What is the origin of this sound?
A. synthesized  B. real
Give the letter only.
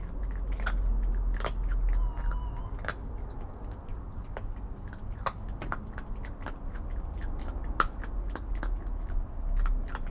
B